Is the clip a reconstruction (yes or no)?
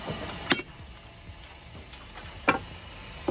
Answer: no